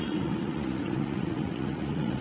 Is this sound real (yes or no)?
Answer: no